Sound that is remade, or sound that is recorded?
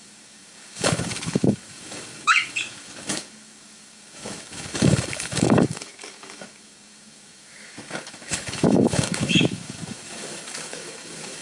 remade